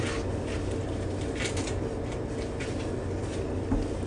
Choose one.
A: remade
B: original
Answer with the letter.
B